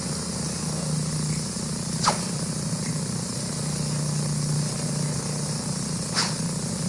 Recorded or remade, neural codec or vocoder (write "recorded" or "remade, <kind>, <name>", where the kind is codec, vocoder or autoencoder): recorded